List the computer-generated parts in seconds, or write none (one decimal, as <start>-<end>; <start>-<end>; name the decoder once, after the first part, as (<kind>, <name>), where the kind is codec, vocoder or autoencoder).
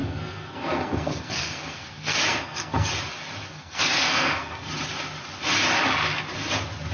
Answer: 0.0-2.9 (codec, SNAC); 3.4-4.7